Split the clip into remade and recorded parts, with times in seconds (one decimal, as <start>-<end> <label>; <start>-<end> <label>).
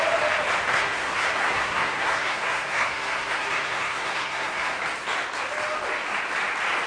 0.0-0.7 recorded; 0.7-4.8 remade; 4.8-6.9 recorded